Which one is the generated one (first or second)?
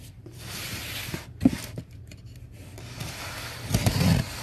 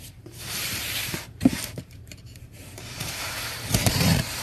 second